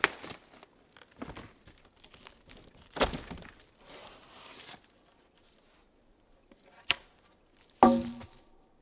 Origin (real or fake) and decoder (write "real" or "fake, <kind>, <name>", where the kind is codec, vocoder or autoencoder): real